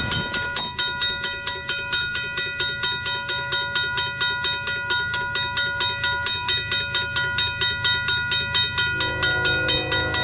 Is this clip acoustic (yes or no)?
yes